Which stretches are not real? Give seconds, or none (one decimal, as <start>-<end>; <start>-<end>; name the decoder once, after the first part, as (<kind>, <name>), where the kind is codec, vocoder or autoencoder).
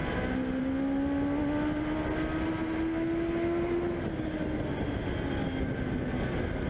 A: none